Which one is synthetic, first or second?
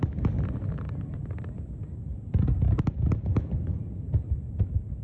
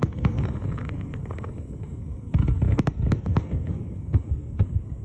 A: second